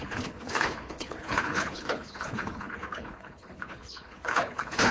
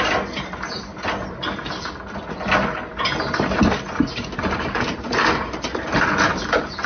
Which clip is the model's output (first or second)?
first